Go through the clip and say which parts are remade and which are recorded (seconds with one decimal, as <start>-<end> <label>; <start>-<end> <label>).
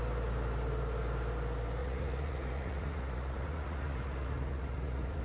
0.0-1.8 recorded; 1.8-5.2 remade